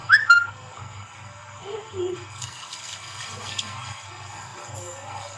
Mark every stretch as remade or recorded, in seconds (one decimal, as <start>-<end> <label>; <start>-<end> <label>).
0.0-5.4 remade